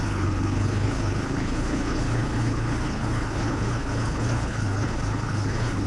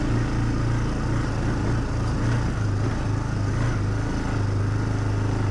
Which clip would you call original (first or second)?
second